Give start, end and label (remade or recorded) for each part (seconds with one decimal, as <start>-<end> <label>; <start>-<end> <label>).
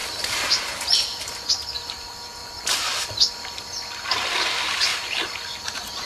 0.0-1.5 remade; 1.5-2.4 recorded; 2.4-2.9 remade; 2.9-4.9 recorded; 4.9-6.1 remade